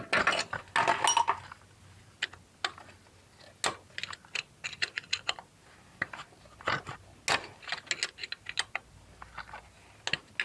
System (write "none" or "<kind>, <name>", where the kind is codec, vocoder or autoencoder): none